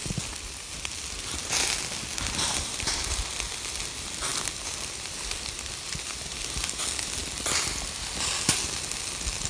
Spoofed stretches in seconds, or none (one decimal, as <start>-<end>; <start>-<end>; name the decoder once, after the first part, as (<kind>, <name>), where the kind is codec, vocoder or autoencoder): none